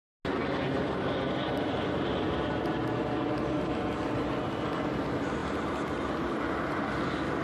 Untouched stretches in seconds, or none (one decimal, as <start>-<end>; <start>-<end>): 0.0-5.4; 6.4-7.4